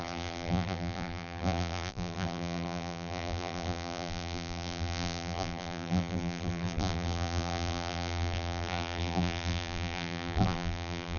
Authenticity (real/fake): fake